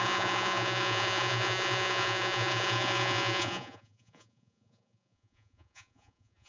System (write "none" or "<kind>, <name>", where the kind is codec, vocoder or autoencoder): vocoder, Vocos